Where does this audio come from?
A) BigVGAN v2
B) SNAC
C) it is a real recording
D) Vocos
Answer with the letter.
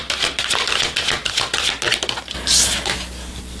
C